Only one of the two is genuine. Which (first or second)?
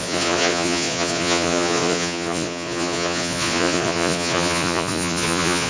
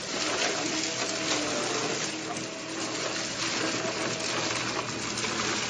second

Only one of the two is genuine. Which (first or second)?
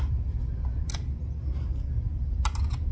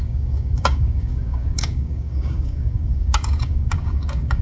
first